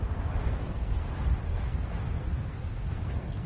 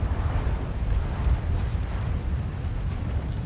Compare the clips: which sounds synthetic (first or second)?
first